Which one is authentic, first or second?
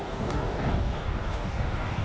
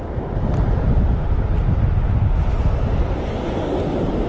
second